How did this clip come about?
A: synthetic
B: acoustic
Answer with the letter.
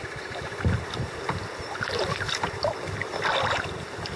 B